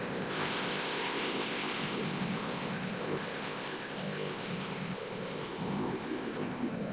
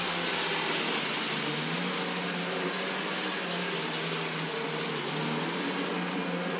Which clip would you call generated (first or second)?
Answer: first